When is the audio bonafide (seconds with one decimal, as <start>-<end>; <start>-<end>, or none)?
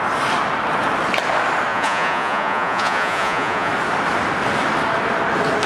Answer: 0.0-1.7; 3.7-5.7